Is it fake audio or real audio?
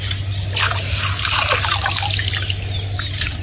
real